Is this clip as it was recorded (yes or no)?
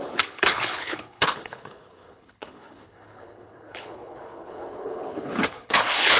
no